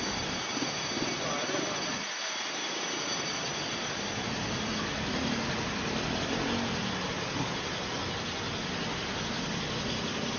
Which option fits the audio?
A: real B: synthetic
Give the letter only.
A